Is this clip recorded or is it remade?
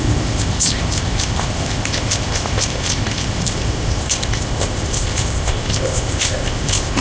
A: remade